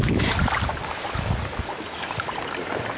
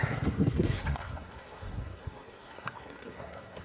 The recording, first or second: first